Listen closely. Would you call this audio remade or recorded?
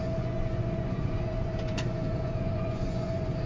remade